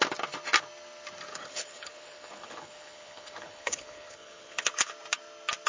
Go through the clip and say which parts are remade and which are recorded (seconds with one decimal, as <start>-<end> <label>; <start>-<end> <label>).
0.0-1.3 recorded; 1.3-4.7 remade; 4.7-5.7 recorded